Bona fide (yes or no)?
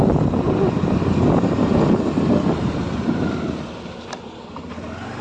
yes